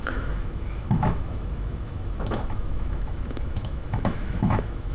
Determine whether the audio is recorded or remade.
remade